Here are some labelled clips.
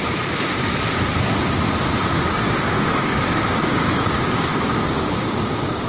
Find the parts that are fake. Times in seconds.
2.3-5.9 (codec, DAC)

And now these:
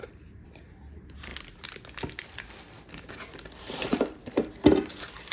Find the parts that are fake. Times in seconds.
0.0-1.3 (vocoder, BigVGAN v2); 3.6-5.3

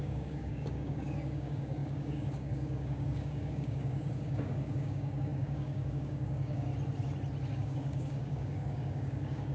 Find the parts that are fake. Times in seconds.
0.0-6.7 (codec, DAC); 7.5-9.5

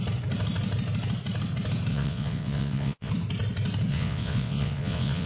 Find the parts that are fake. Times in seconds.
1.9-3.1 (vocoder, WaveNeXt); 3.9-5.3

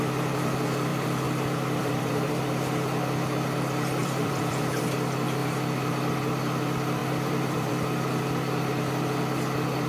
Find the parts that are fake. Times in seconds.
0.9-2.3 (vocoder, BigVGAN v2); 4.0-4.8; 5.4-5.9; 7.0-7.7

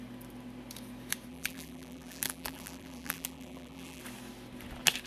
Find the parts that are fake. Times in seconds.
1.3-4.0 (vocoder, BigVGAN v2)

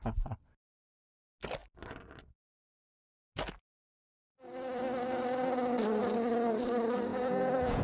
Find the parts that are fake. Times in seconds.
7.1-7.8 (vocoder, Vocos)

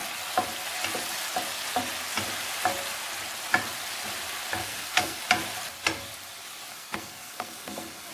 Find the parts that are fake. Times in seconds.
4.6-5.2 (codec, SNAC); 6.7-8.1